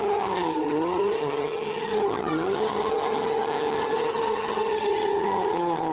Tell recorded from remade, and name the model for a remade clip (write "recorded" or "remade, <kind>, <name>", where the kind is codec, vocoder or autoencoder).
remade, vocoder, HiFi-GAN